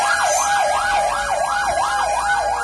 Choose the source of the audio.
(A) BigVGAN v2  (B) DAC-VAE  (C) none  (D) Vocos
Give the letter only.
C